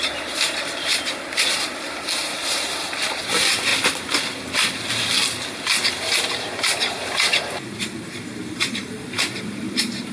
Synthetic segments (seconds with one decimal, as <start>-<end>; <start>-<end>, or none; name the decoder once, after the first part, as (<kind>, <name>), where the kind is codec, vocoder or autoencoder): 0.0-3.7 (vocoder, BigVGAN v2); 6.3-10.1